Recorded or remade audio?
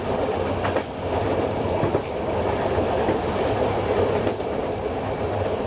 recorded